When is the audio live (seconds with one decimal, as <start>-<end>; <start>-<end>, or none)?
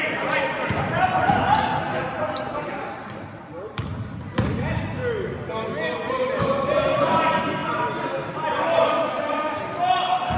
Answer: 5.0-6.1; 7.6-10.4